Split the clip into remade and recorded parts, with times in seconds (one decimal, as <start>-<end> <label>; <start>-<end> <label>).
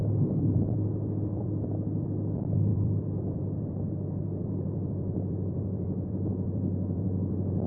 0.0-7.7 remade